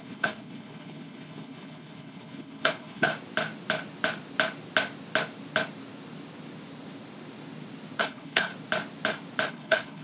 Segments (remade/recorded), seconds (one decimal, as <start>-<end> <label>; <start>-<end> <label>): 0.0-3.1 remade; 3.1-8.0 recorded; 8.0-8.5 remade; 8.5-9.5 recorded; 9.5-10.0 remade